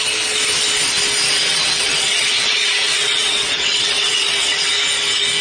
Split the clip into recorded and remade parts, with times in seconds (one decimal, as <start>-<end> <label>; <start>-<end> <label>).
0.0-1.5 recorded; 1.5-4.7 remade; 4.7-5.4 recorded